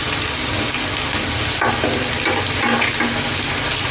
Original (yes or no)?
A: yes